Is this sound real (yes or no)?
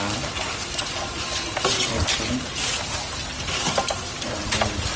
yes